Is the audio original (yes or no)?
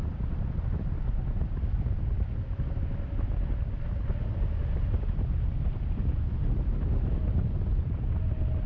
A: yes